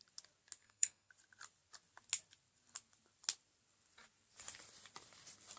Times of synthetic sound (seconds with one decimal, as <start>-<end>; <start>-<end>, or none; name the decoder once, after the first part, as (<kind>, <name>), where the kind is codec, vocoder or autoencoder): 0.6-1.1 (codec, SNAC)